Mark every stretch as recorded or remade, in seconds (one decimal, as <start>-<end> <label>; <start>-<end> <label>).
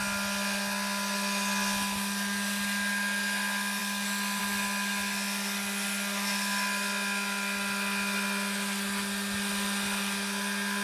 0.0-10.8 recorded